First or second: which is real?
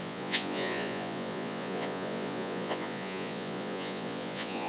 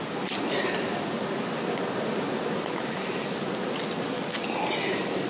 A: second